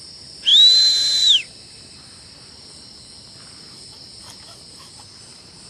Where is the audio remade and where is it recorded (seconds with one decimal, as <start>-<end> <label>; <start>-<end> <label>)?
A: 0.0-5.7 recorded